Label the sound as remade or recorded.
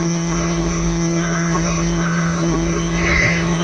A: remade